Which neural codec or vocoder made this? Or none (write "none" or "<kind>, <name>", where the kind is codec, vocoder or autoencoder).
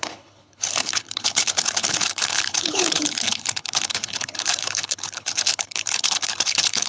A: codec, HILCodec